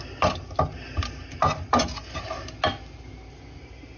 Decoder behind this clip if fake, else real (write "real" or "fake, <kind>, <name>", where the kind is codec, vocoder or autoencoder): real